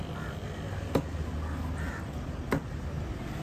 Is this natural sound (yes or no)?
yes